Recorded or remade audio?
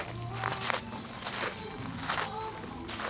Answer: recorded